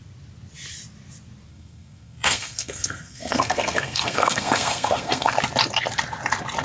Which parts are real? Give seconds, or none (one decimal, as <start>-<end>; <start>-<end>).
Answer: 0.0-1.5; 5.3-6.6